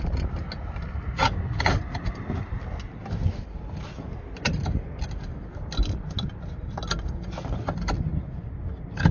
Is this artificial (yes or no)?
no